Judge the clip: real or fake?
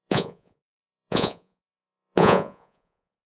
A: fake